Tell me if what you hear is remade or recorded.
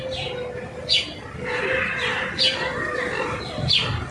recorded